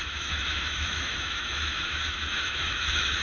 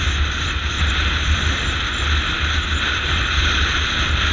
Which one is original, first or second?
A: second